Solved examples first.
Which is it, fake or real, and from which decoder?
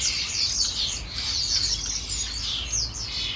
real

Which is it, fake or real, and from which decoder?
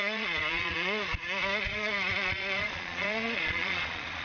fake, vocoder, Vocos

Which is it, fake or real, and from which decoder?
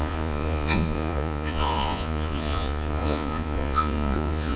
fake, vocoder, Vocos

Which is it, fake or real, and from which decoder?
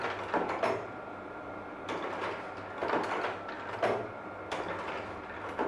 real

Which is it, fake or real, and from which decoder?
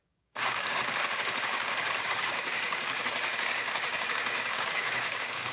fake, codec, DAC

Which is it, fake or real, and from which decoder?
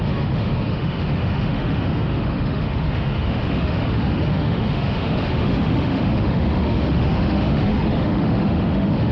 fake, autoencoder, DAC-VAE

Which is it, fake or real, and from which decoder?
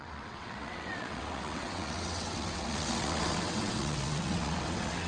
fake, vocoder, WaveNeXt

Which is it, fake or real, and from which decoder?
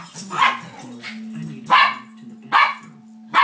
real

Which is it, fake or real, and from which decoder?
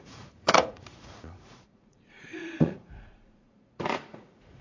fake, vocoder, Vocos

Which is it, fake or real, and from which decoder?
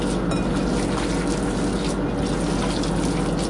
real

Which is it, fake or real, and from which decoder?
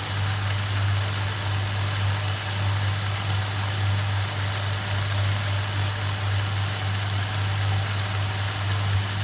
real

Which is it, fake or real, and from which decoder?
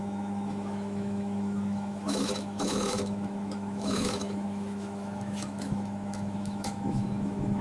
fake, autoencoder, DAC-VAE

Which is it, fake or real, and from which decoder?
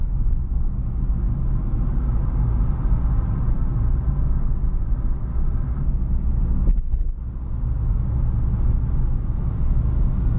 real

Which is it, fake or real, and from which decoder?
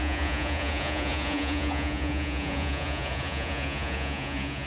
fake, vocoder, Vocos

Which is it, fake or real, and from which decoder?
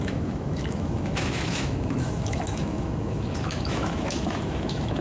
fake, autoencoder, DAC-VAE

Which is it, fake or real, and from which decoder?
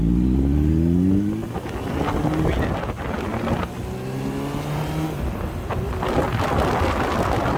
real